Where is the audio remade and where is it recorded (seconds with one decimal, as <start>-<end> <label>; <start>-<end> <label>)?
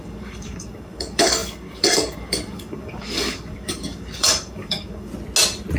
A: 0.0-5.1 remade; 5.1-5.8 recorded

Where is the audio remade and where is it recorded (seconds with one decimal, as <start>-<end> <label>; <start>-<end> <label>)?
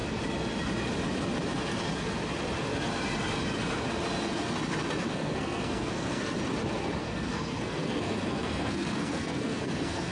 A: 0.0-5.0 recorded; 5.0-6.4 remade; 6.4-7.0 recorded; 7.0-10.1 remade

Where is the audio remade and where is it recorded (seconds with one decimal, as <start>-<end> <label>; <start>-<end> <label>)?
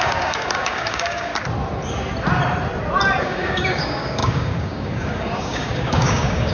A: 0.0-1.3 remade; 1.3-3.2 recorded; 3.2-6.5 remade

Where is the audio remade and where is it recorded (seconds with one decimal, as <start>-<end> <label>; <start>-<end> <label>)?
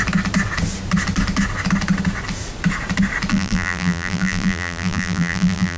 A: 0.0-3.3 recorded; 3.3-5.8 remade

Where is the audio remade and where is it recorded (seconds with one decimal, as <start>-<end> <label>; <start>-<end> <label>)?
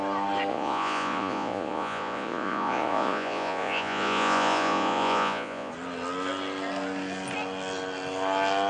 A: 0.0-0.5 recorded; 0.5-5.7 remade; 5.7-8.7 recorded